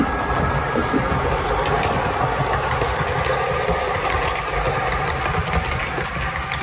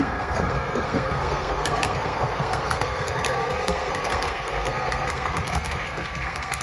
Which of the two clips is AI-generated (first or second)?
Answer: second